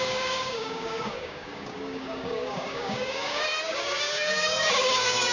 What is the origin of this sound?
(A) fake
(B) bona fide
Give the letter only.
A